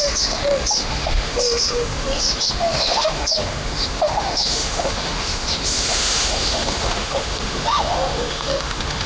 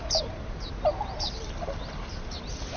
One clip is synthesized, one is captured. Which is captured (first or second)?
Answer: second